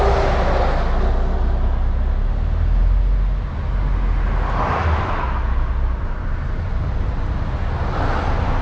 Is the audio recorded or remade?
recorded